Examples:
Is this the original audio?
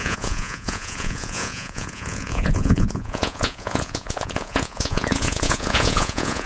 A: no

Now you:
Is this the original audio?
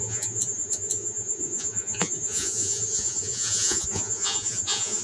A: no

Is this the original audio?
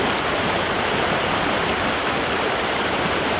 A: yes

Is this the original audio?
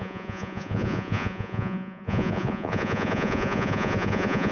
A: no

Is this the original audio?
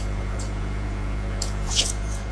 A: no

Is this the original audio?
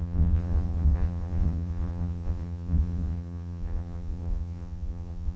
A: no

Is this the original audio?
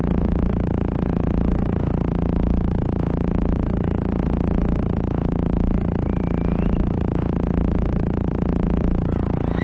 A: no